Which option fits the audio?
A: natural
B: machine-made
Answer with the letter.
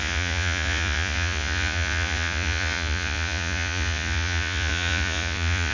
B